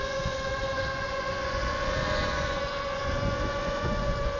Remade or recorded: remade